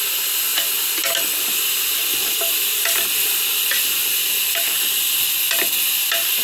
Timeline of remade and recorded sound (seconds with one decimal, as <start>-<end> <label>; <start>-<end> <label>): 0.0-6.4 recorded